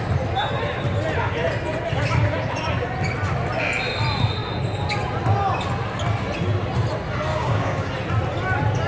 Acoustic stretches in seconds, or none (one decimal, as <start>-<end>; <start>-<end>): 0.0-7.3; 7.9-8.9

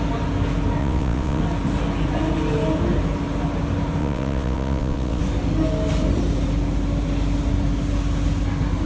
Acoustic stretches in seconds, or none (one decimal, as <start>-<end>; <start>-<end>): 0.0-0.8; 1.4-4.0; 5.2-8.9